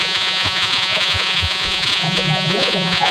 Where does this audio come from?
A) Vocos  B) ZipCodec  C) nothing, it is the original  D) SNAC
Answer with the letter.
A